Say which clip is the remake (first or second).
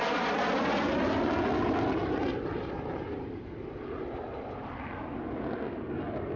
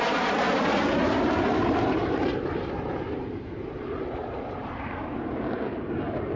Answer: second